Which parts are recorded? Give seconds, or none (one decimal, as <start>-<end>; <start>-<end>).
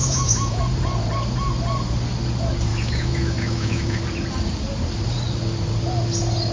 0.6-2.7; 4.0-6.5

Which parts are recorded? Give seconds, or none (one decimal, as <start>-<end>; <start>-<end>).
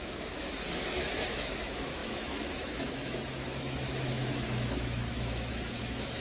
none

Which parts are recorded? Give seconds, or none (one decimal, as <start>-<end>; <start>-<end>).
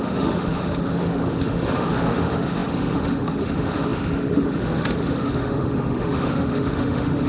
none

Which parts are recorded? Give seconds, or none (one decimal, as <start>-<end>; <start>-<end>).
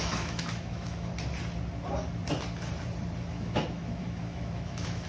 1.1-3.3